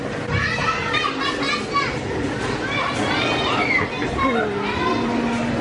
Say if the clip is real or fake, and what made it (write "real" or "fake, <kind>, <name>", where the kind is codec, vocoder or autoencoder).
real